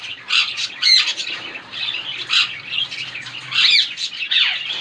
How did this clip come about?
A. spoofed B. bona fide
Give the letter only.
B